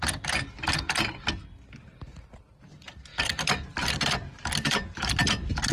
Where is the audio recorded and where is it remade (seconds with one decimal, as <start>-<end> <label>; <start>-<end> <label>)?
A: 0.0-5.7 recorded